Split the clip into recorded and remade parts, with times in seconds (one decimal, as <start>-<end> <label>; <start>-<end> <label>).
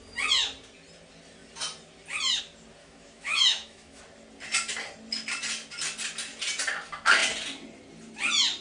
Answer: 0.0-2.8 recorded; 2.8-4.0 remade; 4.0-8.6 recorded